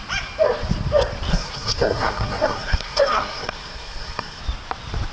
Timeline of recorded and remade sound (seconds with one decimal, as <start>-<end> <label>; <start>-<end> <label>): 0.0-1.3 recorded; 1.3-4.4 remade; 4.4-5.1 recorded